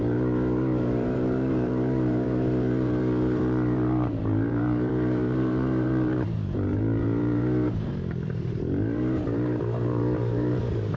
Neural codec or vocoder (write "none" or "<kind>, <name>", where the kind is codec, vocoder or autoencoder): vocoder, BigVGAN v2